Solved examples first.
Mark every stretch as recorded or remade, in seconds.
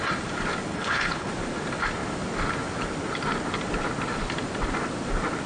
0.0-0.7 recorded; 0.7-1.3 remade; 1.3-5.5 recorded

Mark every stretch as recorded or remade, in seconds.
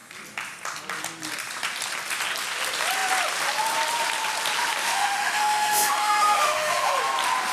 0.0-4.8 recorded; 4.8-7.0 remade; 7.0-7.5 recorded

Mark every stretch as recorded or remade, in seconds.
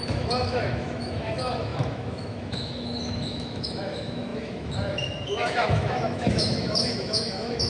0.0-7.7 remade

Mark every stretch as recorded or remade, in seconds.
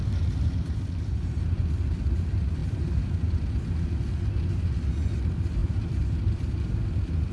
0.0-1.9 remade; 1.9-2.6 recorded; 2.6-3.7 remade; 3.7-5.6 recorded; 5.6-6.5 remade; 6.5-7.3 recorded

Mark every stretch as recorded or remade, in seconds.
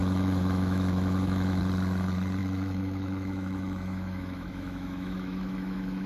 0.0-1.6 remade; 1.6-2.4 recorded; 2.4-6.1 remade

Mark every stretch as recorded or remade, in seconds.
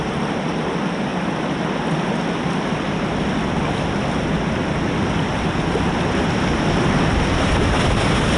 0.0-8.4 recorded